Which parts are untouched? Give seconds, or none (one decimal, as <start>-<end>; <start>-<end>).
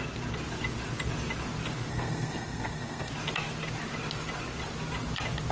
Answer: 0.0-1.9; 3.1-5.5